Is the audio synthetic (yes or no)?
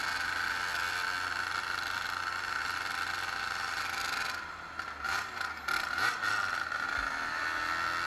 no